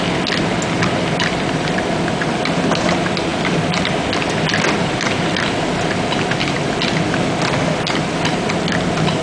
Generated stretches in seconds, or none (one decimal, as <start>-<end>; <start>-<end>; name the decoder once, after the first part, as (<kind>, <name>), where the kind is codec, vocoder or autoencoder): none